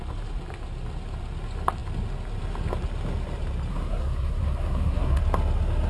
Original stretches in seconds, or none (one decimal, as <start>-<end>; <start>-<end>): 0.0-3.7; 5.2-5.9